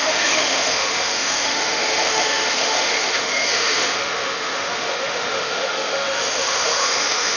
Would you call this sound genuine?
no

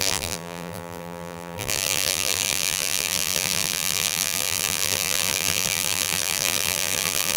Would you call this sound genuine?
no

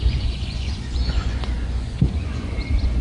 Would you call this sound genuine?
no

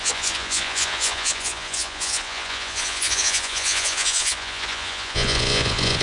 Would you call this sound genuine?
no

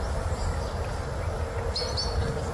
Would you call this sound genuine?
yes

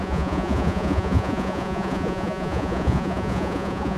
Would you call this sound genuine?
no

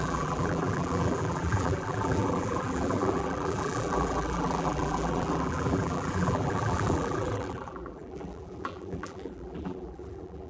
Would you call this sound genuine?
no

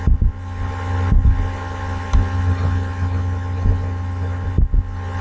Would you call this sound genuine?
yes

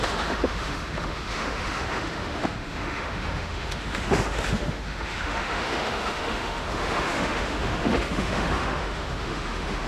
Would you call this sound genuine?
no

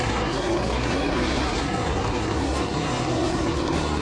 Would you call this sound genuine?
no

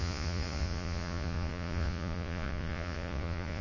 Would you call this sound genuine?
no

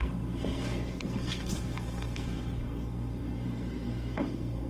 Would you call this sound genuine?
no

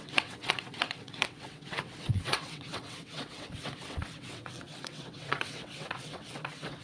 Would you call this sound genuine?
no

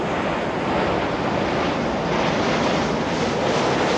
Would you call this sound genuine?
yes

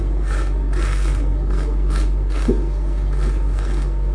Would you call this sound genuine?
no